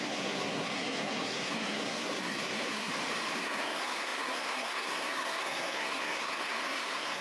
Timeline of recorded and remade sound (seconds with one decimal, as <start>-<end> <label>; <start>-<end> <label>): 0.0-2.9 remade; 2.9-3.4 recorded; 3.4-7.2 remade